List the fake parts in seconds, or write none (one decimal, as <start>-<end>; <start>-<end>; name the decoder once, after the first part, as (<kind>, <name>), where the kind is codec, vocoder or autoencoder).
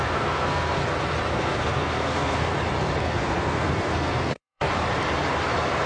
0.0-0.8 (codec, SNAC); 1.3-2.5; 3.0-4.7